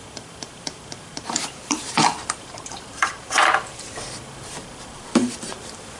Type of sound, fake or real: fake